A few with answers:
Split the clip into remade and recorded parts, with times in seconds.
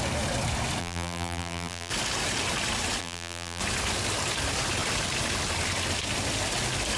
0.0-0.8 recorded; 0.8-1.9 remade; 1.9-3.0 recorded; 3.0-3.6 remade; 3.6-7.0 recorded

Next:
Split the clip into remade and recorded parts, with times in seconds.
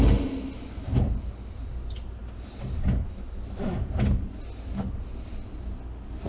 0.0-6.3 recorded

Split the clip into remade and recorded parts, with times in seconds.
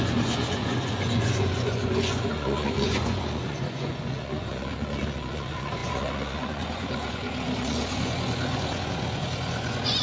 0.0-10.0 remade